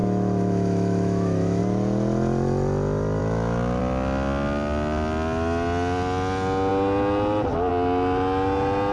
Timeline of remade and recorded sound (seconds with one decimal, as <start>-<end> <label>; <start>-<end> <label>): 0.0-1.6 remade; 1.6-3.2 recorded; 3.2-3.8 remade; 3.8-8.9 recorded